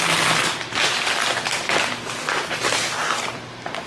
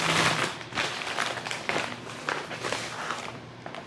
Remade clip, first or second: second